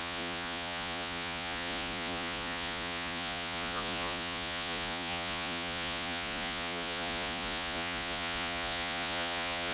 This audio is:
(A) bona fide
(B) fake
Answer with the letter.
B